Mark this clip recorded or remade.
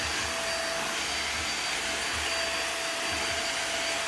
recorded